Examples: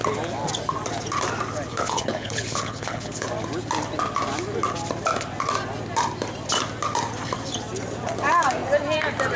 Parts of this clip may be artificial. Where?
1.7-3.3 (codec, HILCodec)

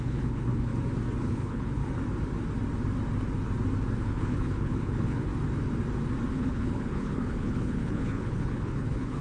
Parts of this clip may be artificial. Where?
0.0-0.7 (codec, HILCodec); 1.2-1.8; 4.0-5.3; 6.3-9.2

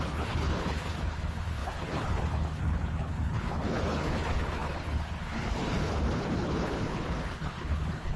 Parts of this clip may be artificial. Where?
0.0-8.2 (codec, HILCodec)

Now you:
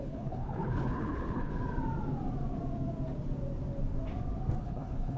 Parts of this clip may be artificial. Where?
0.0-1.5 (codec, HILCodec); 4.6-5.2

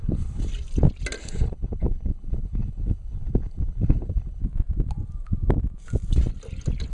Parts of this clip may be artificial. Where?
0.0-0.5 (codec, HILCodec); 1.2-4.4

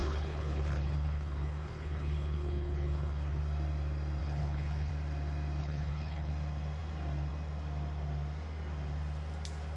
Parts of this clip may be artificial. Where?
0.0-3.4 (codec, HILCodec); 4.2-4.9; 5.6-6.3